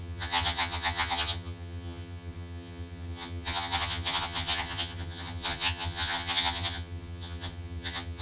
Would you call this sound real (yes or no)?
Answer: no